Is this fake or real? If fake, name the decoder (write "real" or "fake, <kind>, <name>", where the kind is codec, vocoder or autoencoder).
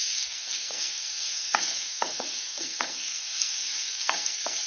fake, codec, SNAC